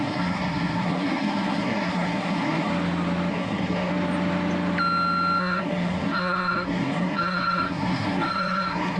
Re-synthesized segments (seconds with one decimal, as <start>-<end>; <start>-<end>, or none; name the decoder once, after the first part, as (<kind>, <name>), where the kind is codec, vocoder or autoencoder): 0.0-2.7 (codec, SNAC); 3.3-3.9; 5.4-9.0